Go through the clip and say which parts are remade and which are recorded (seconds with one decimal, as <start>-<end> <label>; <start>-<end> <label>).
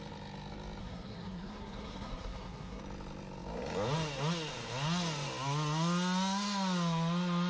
0.0-0.8 recorded; 0.8-2.8 remade; 2.8-7.5 recorded